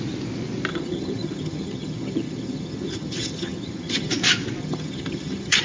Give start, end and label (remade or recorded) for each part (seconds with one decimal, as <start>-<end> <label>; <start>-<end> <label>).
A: 0.0-0.7 recorded; 0.7-4.1 remade; 4.1-4.6 recorded; 4.6-5.6 remade